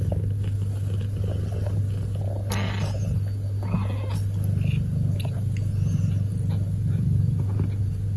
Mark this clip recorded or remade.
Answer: recorded